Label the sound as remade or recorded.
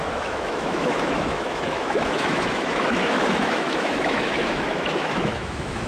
remade